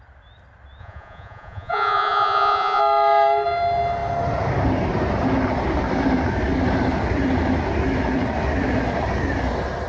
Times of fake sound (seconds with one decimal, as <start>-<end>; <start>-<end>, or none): 0.8-2.8